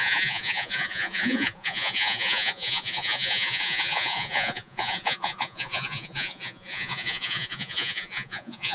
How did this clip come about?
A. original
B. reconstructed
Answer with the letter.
B